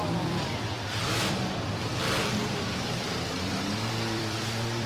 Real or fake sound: fake